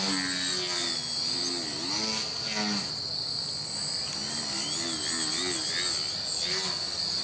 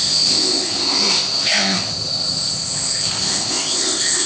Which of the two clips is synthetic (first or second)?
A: second